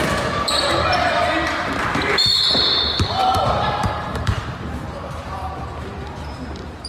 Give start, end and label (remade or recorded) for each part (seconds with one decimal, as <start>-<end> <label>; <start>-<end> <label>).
0.0-6.9 remade